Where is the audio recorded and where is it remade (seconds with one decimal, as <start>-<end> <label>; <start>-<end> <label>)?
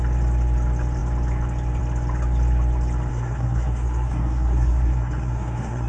0.0-3.1 recorded; 3.1-5.9 remade